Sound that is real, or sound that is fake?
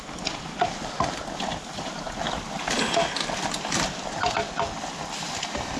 real